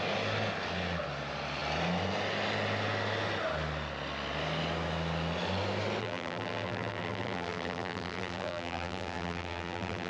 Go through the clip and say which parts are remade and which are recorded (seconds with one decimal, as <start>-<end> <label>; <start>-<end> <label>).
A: 0.0-6.0 recorded; 6.0-10.1 remade